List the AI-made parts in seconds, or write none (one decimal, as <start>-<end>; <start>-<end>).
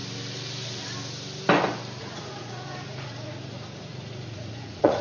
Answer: 2.0-5.0